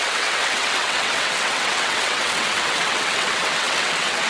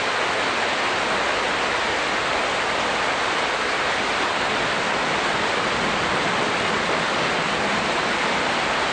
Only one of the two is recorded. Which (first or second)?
second